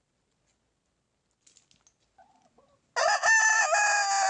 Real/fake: real